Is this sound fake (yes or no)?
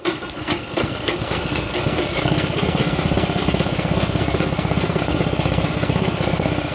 yes